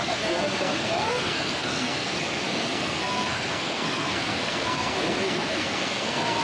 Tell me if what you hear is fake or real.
fake